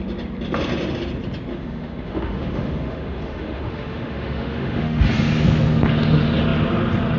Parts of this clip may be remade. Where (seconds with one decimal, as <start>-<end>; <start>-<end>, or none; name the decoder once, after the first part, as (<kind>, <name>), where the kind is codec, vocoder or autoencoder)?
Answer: 1.5-5.1 (autoencoder, DAC-VAE)